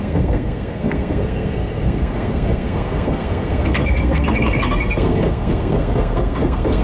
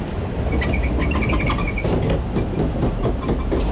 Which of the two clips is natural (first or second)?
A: second